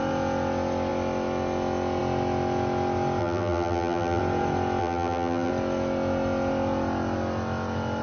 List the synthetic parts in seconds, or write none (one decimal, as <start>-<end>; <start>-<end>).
3.2-4.2; 4.8-5.5